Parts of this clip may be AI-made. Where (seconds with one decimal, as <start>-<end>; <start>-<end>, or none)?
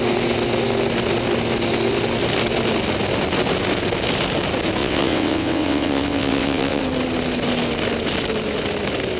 4.8-6.8